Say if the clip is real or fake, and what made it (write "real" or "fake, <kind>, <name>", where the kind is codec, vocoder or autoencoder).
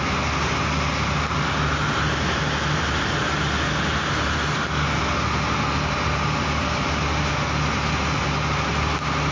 real